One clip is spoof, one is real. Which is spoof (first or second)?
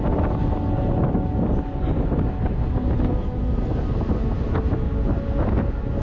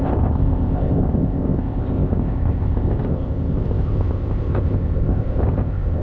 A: second